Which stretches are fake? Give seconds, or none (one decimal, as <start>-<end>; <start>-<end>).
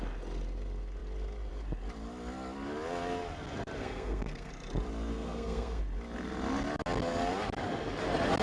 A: 3.8-4.5; 5.1-5.8